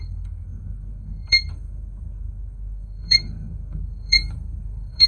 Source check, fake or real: fake